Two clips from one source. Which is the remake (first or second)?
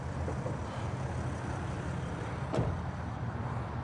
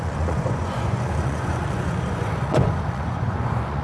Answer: second